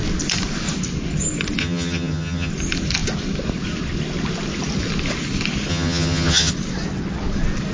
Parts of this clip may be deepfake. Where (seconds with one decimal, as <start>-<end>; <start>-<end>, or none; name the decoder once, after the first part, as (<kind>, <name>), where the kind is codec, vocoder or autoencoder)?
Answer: 1.6-2.5 (vocoder, HiFi-GAN); 5.7-6.5

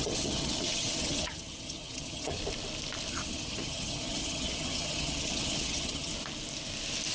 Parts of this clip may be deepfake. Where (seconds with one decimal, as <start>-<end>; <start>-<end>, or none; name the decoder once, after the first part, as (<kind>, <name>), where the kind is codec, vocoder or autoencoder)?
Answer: 0.0-2.4 (vocoder, HiFi-GAN); 3.1-6.1

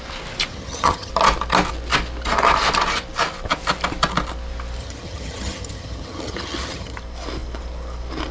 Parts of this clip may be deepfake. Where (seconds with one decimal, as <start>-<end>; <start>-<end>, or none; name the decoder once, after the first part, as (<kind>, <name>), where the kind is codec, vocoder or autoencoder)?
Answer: 0.5-1.1 (vocoder, HiFi-GAN); 4.8-7.0

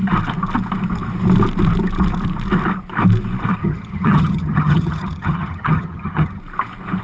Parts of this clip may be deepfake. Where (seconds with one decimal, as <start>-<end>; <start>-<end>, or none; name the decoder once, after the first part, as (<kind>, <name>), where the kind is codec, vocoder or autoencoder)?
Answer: 3.6-6.4 (vocoder, HiFi-GAN)

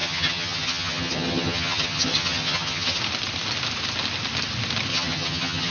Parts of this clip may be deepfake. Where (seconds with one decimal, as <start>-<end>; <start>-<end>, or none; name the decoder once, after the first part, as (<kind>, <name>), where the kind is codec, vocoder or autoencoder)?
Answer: 0.0-3.0 (vocoder, HiFi-GAN); 4.9-5.7

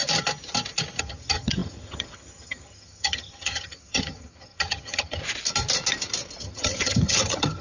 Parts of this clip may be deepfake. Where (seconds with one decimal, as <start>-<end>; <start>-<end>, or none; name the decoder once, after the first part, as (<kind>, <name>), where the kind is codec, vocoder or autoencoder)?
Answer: 1.0-5.2 (vocoder, HiFi-GAN); 6.4-7.6

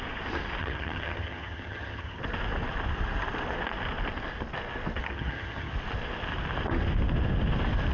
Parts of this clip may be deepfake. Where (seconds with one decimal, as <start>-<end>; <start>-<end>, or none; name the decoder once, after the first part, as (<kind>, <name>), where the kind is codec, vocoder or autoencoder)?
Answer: 0.6-2.2 (vocoder, HiFi-GAN); 5.0-5.7